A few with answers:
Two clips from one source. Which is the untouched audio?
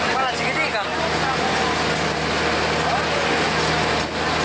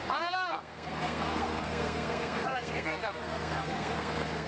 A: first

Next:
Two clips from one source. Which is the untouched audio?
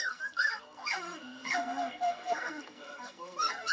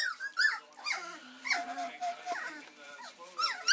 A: second